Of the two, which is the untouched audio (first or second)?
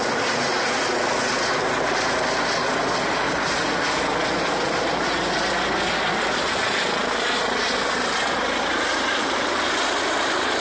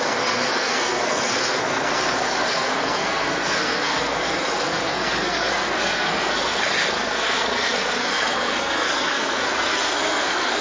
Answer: first